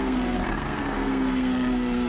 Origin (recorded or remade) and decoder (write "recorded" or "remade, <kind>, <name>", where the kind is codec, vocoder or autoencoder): remade, codec, SNAC